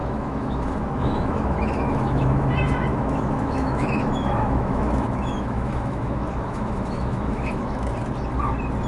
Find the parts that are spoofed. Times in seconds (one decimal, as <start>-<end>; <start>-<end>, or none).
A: 0.0-2.5; 2.9-7.9